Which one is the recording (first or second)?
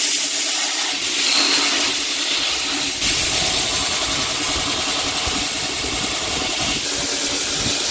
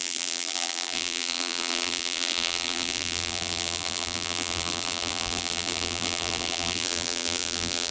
first